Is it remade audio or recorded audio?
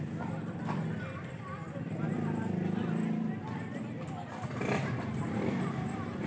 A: remade